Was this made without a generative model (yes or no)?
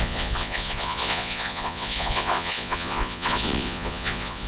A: no